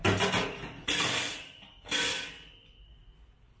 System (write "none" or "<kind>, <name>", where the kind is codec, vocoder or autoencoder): none